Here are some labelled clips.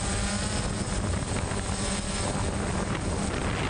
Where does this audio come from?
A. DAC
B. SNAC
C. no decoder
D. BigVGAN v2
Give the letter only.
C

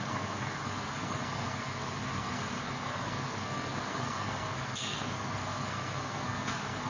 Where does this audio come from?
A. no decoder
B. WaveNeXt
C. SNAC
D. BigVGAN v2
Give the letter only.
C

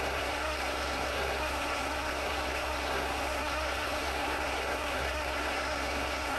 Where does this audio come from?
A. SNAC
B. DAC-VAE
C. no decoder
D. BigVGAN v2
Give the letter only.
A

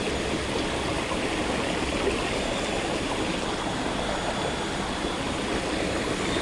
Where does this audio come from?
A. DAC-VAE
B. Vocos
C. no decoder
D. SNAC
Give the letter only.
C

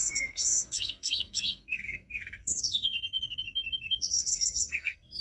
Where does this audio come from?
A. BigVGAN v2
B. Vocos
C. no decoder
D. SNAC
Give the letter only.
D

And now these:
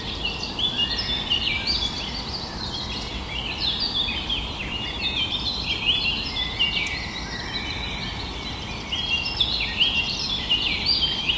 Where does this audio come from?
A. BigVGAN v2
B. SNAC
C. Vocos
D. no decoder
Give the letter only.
D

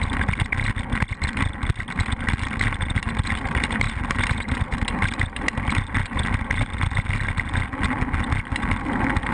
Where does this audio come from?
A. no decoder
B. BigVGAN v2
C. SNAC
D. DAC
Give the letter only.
A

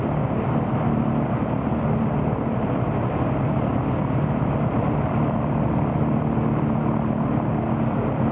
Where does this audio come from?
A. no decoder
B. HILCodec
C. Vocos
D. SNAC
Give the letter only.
A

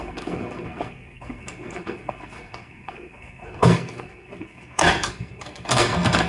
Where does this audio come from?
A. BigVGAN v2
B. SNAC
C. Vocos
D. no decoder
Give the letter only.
B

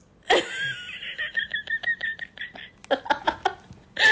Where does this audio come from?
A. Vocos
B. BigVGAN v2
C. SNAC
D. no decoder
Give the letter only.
D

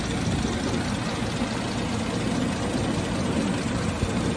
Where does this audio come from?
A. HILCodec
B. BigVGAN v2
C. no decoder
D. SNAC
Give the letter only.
C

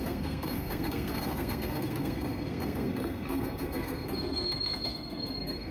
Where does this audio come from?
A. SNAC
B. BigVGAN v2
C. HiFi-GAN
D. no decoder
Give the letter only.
A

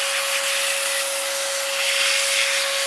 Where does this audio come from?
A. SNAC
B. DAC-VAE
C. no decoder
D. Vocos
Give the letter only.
C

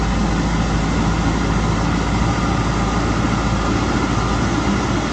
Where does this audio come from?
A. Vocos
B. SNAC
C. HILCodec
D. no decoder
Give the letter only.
D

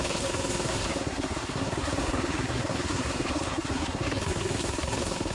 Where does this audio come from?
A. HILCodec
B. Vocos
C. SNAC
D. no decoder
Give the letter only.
C